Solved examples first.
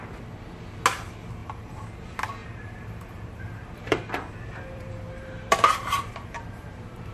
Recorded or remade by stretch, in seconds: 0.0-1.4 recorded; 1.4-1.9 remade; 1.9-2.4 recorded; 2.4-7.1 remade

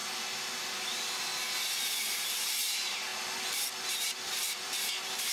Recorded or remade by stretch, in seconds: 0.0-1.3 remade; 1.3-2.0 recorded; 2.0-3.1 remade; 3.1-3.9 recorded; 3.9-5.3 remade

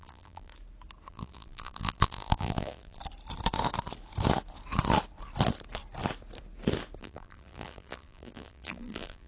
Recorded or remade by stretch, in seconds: 0.0-0.5 remade; 0.5-1.1 recorded; 1.1-3.0 remade; 3.0-7.0 recorded; 7.0-9.3 remade

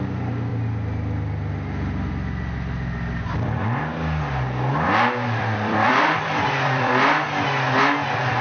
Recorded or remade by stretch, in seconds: 0.0-5.4 recorded; 5.4-6.9 remade; 6.9-8.4 recorded

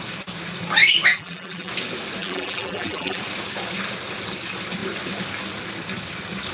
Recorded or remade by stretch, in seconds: 0.0-1.1 recorded; 1.1-1.7 remade; 1.7-2.2 recorded; 2.2-3.2 remade; 3.2-6.5 recorded

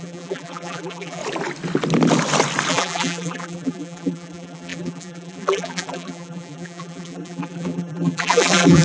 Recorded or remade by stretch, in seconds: 0.0-1.2 remade; 1.2-2.7 recorded; 2.7-8.8 remade

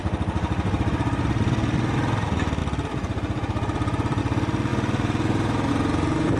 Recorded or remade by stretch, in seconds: 0.0-2.6 recorded; 2.6-4.2 remade; 4.2-6.4 recorded

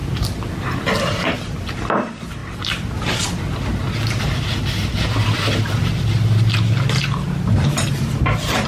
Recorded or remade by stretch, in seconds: 0.0-1.0 recorded; 1.0-2.4 remade; 2.4-4.2 recorded; 4.2-8.7 remade